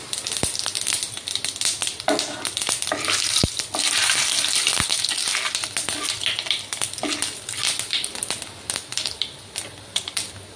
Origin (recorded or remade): recorded